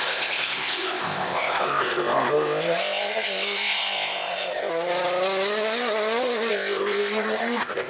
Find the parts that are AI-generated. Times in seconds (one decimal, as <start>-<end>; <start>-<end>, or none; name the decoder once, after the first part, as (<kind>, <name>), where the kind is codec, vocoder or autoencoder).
0.0-4.7 (codec, ZipCodec); 6.5-7.9